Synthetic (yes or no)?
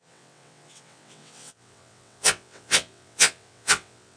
yes